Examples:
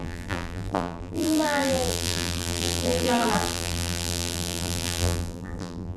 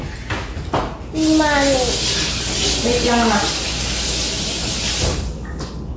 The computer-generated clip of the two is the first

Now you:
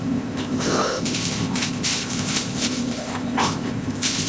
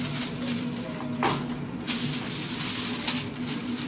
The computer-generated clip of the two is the first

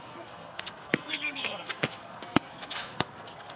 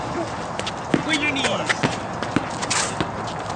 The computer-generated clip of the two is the first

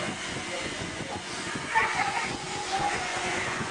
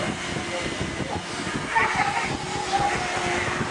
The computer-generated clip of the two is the first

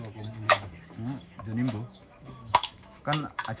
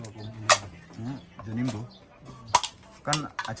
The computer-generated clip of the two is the first